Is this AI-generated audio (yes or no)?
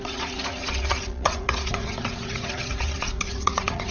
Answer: yes